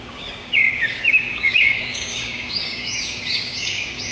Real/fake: fake